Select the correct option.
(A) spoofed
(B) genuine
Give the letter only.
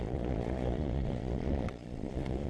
A